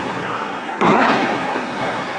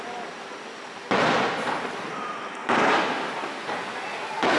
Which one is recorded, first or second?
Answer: second